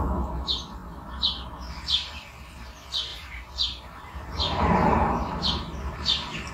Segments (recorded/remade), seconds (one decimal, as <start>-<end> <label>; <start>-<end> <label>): 0.0-3.1 recorded; 3.1-6.5 remade